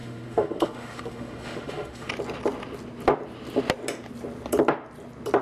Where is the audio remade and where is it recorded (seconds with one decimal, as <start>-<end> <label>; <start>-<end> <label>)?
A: 0.0-2.1 remade; 2.1-5.4 recorded